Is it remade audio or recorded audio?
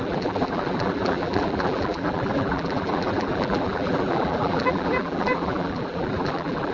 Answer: remade